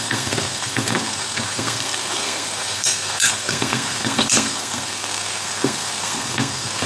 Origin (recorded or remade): remade